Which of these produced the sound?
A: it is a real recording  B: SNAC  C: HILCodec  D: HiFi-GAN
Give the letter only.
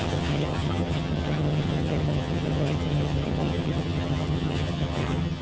D